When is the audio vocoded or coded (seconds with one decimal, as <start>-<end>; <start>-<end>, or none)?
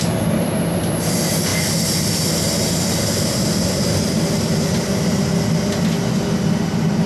none